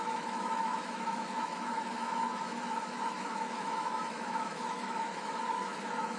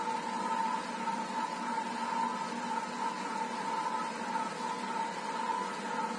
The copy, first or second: first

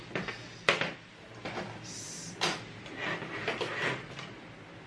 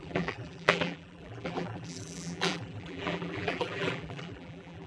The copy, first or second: second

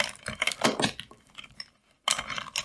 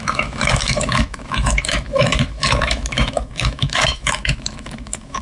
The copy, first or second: second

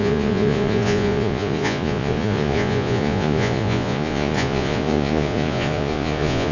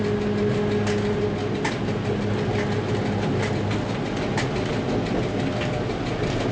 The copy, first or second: first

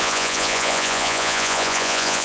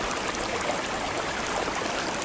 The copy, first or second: first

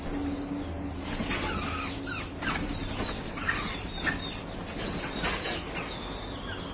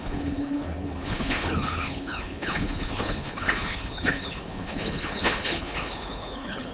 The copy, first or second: second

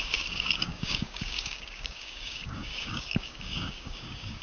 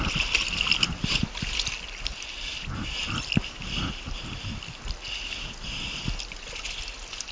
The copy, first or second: first